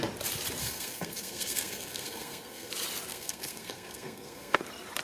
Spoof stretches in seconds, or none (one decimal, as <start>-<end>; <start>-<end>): 0.6-2.7; 3.1-4.6